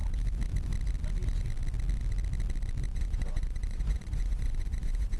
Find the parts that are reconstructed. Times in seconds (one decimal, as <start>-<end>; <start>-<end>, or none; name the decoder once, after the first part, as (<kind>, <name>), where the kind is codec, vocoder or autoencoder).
2.9-5.2 (vocoder, Vocos)